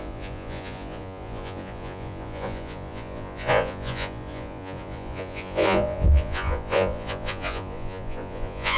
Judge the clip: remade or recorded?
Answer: remade